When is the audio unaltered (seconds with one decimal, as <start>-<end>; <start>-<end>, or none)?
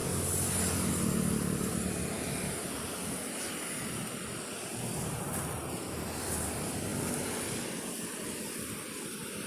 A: 0.0-9.5